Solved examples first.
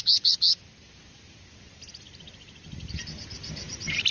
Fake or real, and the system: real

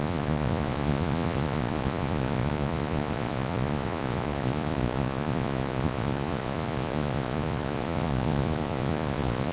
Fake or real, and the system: fake, vocoder, Vocos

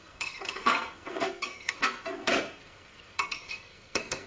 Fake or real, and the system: fake, codec, SNAC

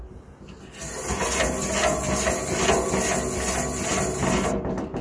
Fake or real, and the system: real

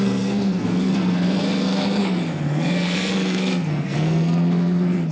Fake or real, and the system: fake, codec, SNAC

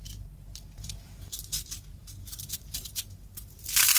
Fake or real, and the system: fake, vocoder, BigVGAN v2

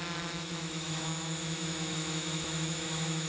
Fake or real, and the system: fake, autoencoder, DAC-VAE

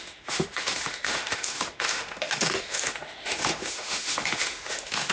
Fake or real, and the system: fake, autoencoder, DAC-VAE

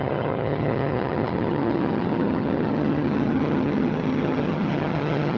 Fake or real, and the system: fake, vocoder, HiFi-GAN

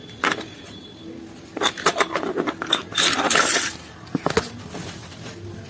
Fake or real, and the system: real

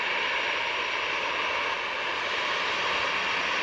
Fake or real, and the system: real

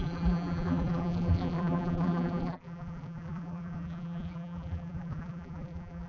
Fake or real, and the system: fake, vocoder, BigVGAN v2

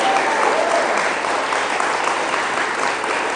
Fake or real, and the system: real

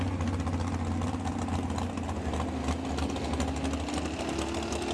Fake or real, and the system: real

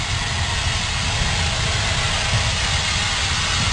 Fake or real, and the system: real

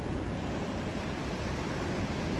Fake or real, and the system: real